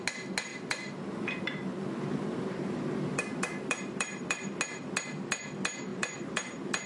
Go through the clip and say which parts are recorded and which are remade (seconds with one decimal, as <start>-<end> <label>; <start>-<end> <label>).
0.0-0.5 recorded; 0.5-4.6 remade; 4.6-5.9 recorded; 5.9-6.9 remade